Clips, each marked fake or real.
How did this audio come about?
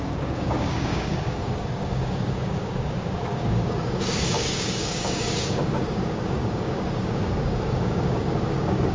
fake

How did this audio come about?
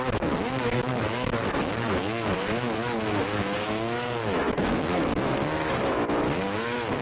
fake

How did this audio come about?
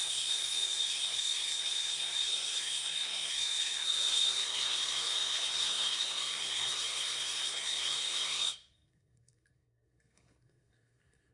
fake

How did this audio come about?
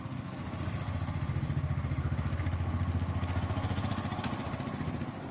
real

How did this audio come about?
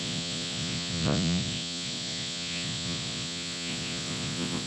fake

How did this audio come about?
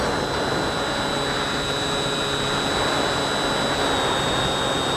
real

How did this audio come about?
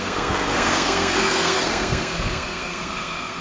fake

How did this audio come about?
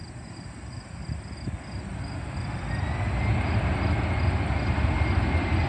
real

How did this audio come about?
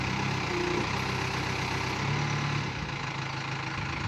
real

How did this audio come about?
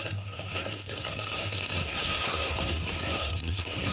fake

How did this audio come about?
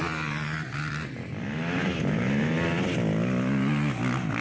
real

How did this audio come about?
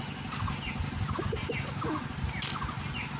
real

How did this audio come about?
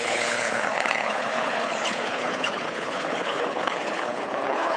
fake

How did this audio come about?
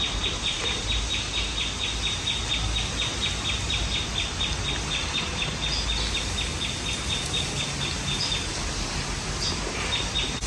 real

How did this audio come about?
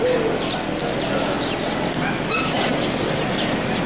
real